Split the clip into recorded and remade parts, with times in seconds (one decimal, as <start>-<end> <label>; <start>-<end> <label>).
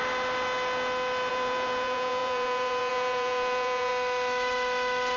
0.0-1.3 recorded; 1.3-3.9 remade; 3.9-5.2 recorded